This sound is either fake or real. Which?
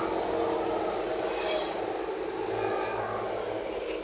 real